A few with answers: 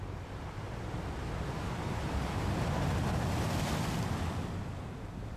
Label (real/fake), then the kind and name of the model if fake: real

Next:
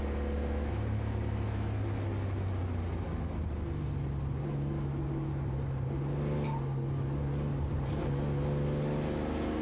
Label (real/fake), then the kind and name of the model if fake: real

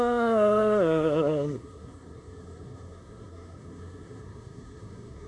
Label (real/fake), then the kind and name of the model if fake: fake, codec, SNAC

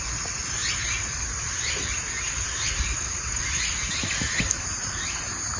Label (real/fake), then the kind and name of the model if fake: real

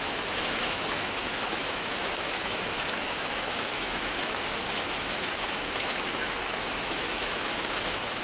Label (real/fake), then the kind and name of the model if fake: fake, autoencoder, DAC-VAE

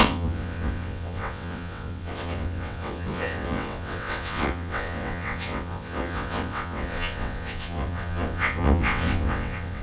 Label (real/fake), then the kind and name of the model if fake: fake, vocoder, WaveNeXt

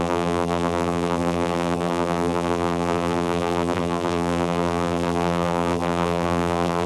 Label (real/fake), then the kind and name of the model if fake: fake, vocoder, BigVGAN v2